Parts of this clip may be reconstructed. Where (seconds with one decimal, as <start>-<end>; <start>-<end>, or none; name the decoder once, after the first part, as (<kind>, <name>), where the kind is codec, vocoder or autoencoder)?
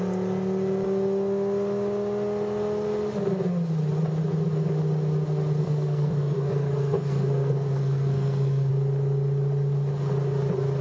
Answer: 5.6-8.7 (codec, SNAC)